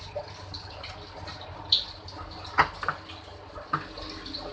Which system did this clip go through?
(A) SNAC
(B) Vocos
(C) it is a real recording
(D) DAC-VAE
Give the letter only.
C